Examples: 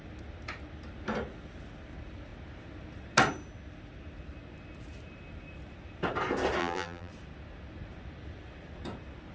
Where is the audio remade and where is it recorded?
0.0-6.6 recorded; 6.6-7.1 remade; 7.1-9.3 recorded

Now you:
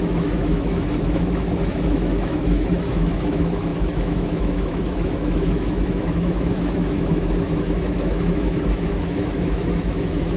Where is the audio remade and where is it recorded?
0.0-10.4 remade